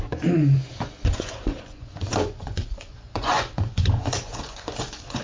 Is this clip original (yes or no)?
no